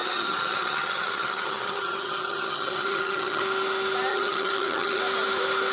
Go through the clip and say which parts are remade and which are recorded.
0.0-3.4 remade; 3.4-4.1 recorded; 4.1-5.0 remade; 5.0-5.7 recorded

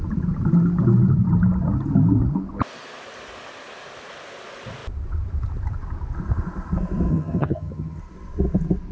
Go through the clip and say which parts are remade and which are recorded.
0.0-7.1 recorded; 7.1-8.0 remade; 8.0-8.9 recorded